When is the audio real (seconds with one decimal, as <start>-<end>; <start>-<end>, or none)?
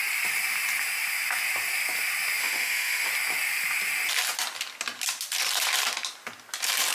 0.0-2.4; 3.1-6.9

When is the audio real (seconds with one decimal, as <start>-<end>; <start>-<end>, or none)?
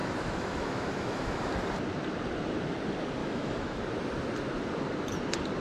1.5-3.2; 3.8-5.6